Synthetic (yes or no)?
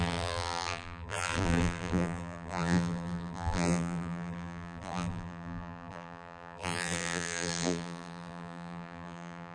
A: yes